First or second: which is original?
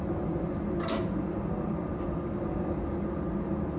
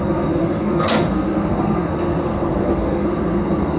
first